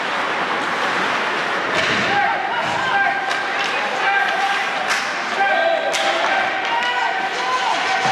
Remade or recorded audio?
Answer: recorded